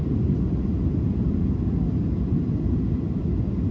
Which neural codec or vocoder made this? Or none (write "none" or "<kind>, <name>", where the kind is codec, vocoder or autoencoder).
none